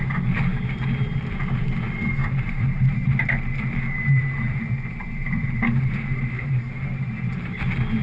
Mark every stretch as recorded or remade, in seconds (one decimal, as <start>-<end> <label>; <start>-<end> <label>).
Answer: 0.0-8.0 remade